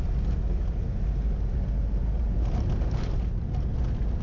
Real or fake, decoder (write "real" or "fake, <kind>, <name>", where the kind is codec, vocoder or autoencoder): real